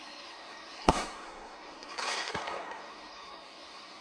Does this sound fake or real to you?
fake